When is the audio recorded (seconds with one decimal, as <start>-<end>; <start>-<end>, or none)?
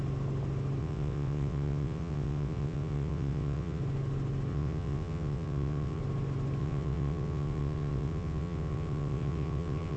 0.0-0.8; 3.8-4.5; 6.0-6.6